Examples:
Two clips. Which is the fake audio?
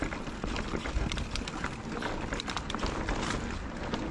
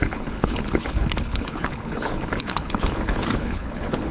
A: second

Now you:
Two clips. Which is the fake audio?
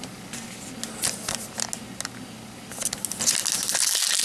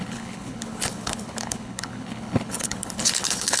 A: second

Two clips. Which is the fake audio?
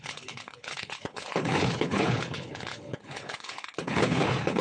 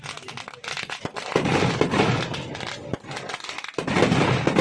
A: first